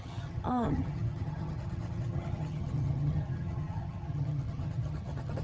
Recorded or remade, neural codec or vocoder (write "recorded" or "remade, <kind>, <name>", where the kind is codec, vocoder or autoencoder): remade, vocoder, HiFi-GAN